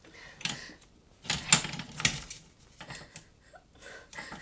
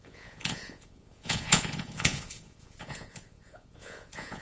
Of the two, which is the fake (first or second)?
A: second